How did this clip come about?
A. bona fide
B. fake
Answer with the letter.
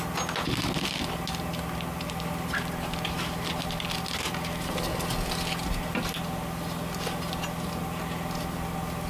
A